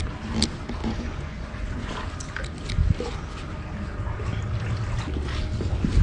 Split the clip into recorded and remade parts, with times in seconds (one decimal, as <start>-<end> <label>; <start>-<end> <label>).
0.0-0.8 recorded; 0.8-1.9 remade; 1.9-6.0 recorded